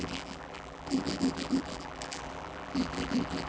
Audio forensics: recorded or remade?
remade